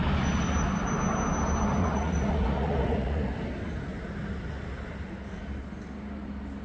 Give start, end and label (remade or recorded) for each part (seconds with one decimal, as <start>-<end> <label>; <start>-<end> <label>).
0.0-1.8 recorded; 1.8-3.3 remade; 3.3-6.6 recorded